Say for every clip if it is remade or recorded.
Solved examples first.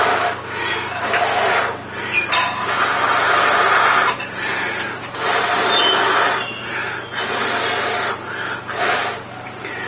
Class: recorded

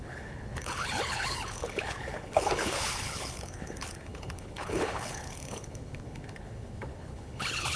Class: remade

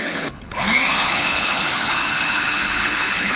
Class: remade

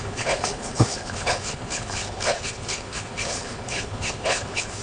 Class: remade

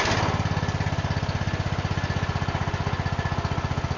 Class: recorded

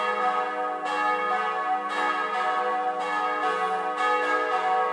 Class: recorded